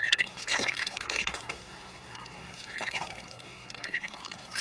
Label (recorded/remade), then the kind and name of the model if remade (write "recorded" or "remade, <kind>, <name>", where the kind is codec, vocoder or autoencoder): remade, codec, SNAC